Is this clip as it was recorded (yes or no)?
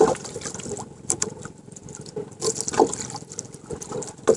yes